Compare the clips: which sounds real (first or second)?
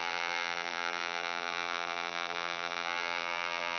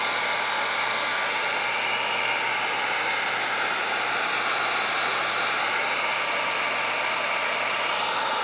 second